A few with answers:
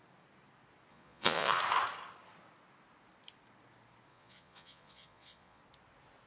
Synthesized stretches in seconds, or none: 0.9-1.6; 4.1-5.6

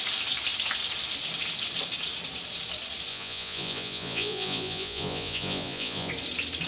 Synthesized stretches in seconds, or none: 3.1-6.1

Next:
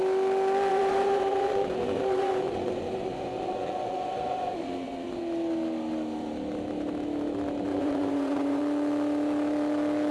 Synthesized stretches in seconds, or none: 0.7-5.2; 7.7-8.6

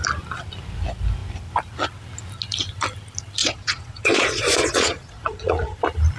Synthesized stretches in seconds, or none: 3.4-5.8

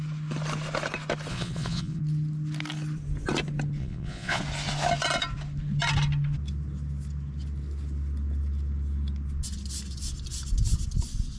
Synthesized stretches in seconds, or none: 1.3-2.0; 3.8-4.4

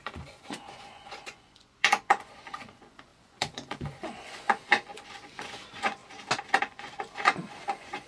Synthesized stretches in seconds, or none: 0.0-6.0; 6.6-8.1

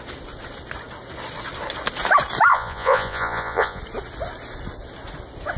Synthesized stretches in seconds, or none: 2.5-3.8